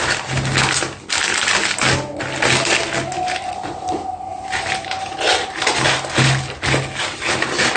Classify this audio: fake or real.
real